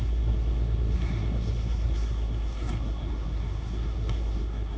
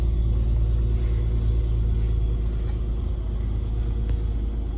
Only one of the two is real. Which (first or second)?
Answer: second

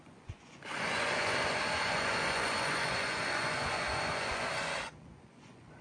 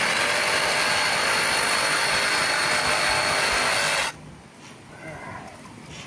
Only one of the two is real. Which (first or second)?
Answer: second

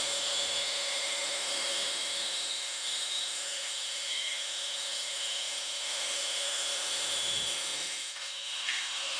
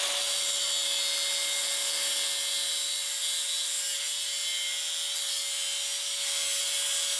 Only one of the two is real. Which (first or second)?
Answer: second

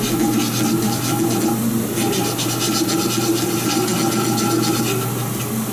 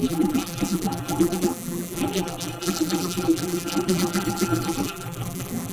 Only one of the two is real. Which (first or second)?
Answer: first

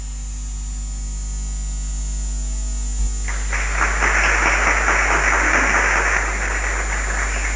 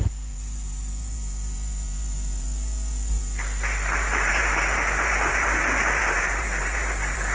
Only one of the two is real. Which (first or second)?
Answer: first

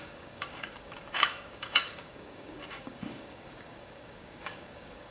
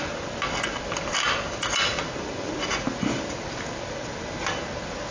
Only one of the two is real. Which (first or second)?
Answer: second